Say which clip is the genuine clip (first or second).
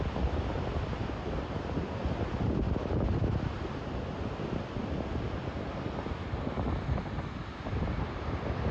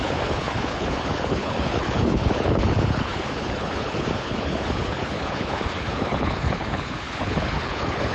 first